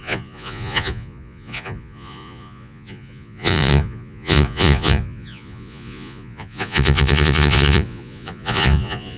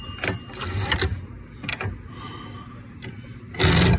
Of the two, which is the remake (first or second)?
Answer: first